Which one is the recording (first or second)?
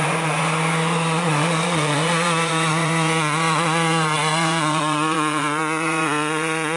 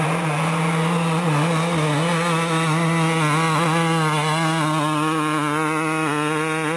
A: second